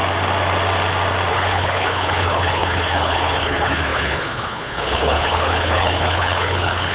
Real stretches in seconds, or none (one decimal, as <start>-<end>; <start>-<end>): 0.0-1.3